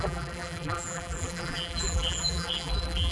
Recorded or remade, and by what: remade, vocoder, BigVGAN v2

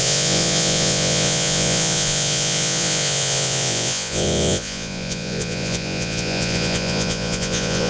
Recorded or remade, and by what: remade, vocoder, Vocos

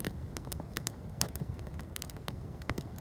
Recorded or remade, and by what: remade, codec, SNAC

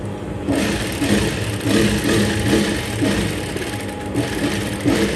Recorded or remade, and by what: recorded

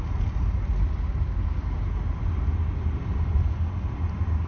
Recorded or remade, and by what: recorded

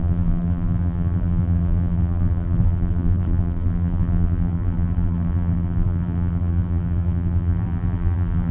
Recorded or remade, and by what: remade, vocoder, BigVGAN v2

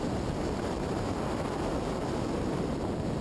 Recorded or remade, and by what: recorded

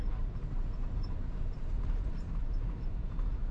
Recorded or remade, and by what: remade, vocoder, BigVGAN v2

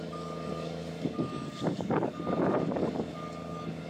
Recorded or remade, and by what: remade, codec, DAC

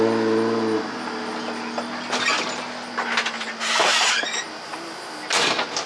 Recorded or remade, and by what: recorded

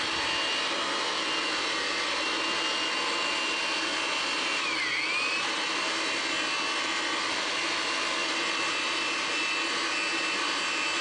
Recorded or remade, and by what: recorded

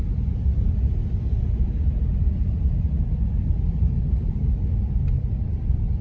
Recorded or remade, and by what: remade, vocoder, BigVGAN v2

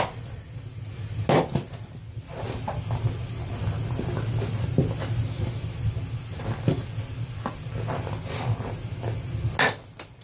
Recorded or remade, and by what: recorded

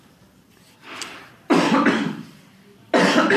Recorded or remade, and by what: remade, vocoder, BigVGAN v2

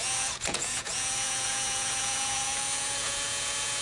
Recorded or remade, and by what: remade, vocoder, Vocos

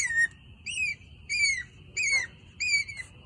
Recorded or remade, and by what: recorded